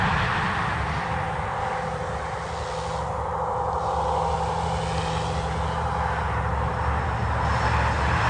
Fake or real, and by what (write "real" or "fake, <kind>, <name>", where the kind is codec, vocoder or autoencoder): real